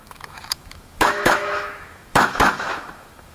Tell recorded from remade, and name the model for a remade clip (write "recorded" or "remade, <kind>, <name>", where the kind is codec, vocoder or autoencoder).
remade, autoencoder, DAC-VAE